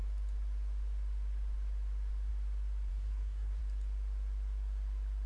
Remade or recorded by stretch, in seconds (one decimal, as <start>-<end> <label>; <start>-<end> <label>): 0.0-2.9 recorded; 2.9-3.6 remade; 3.6-5.3 recorded